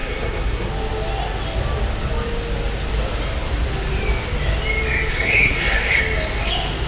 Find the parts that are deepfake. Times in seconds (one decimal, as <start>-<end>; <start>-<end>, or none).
0.0-0.7; 5.1-6.0

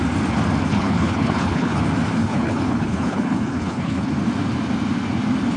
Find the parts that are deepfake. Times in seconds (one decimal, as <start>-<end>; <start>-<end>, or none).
0.7-1.8; 2.2-4.1